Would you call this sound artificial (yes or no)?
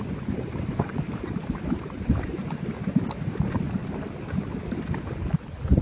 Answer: no